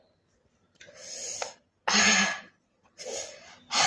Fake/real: real